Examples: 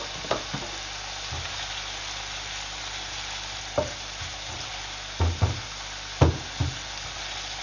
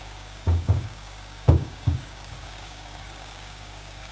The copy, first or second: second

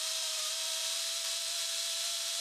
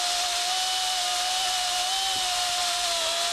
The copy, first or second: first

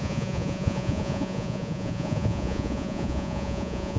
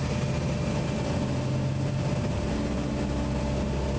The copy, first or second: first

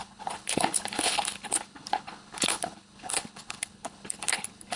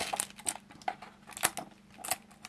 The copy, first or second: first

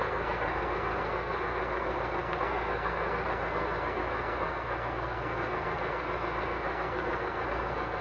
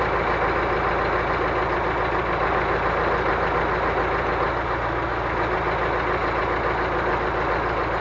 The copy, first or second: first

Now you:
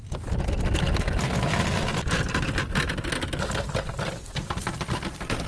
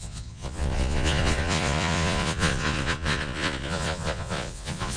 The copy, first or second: second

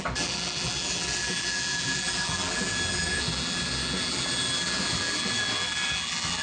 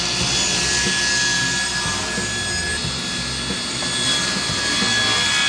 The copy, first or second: first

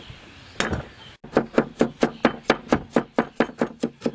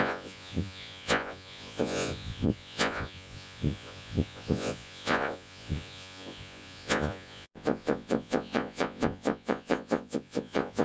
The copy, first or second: second